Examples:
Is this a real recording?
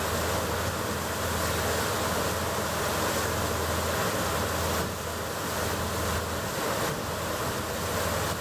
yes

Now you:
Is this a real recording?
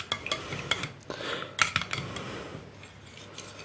yes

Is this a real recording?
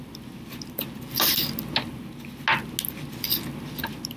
yes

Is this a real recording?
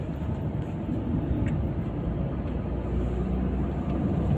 yes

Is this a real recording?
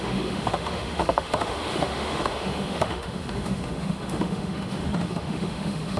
no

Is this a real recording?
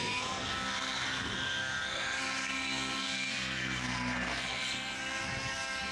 no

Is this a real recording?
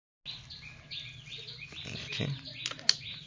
yes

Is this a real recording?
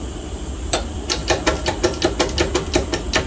no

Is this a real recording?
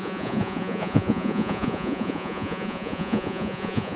no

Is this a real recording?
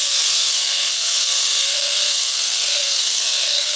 no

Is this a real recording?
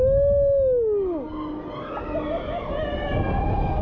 yes